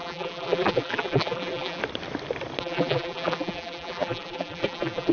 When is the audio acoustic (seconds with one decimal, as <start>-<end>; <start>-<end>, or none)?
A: 1.8-2.6